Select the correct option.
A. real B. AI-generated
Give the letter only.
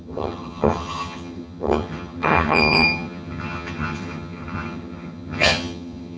B